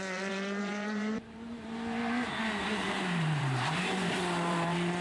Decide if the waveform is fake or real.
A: fake